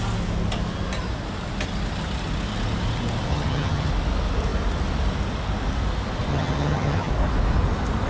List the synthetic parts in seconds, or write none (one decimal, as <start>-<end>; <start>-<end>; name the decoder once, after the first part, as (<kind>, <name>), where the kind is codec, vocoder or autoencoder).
3.3-3.9 (vocoder, HiFi-GAN); 6.3-7.1